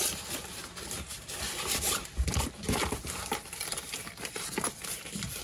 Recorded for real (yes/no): no